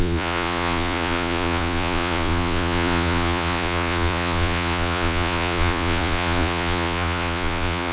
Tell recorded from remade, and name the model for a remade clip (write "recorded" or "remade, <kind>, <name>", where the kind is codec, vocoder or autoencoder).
remade, vocoder, Vocos